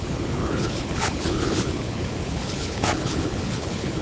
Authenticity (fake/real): fake